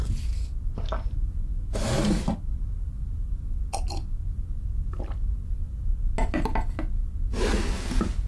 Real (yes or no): yes